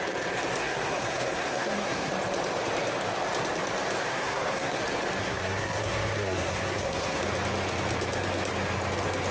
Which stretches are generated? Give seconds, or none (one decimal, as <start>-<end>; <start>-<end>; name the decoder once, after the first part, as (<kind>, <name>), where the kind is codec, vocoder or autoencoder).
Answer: 0.6-2.1 (codec, SNAC); 4.1-4.8; 5.2-7.2